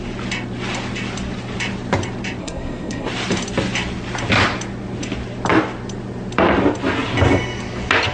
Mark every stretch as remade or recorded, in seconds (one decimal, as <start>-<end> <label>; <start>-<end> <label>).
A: 0.0-2.4 recorded; 2.4-3.1 remade; 3.1-8.1 recorded